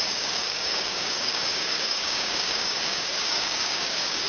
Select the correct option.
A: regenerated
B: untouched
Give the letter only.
A